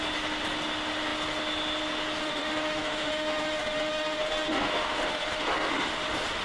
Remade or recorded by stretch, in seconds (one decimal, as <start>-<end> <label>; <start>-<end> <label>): 0.0-2.2 recorded; 2.2-5.7 remade; 5.7-6.4 recorded